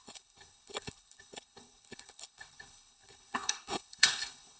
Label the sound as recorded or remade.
remade